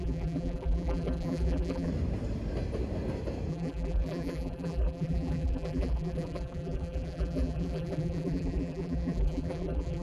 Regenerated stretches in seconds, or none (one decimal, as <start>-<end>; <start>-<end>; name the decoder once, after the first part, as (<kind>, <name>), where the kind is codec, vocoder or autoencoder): 0.0-1.9 (vocoder, BigVGAN v2); 3.5-10.0